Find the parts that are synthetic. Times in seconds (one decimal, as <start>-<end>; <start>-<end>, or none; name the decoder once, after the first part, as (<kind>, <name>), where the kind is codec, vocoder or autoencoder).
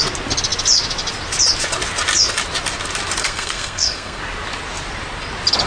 3.2-4.2 (codec, SNAC)